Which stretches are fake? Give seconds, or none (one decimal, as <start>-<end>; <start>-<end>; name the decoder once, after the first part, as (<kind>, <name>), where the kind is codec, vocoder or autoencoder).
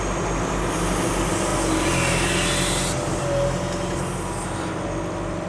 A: none